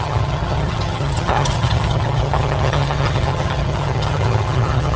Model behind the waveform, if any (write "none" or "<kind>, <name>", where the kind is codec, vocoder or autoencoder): vocoder, HiFi-GAN